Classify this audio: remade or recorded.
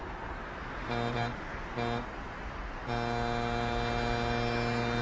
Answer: recorded